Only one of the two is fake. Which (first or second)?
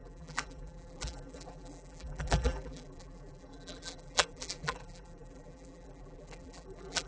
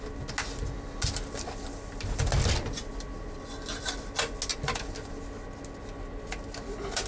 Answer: first